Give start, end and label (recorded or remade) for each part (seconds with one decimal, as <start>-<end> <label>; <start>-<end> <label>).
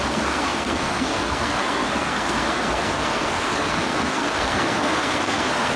0.0-5.8 remade